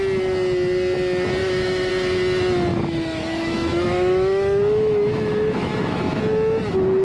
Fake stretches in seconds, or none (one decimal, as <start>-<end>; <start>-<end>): 1.4-1.9; 2.7-6.2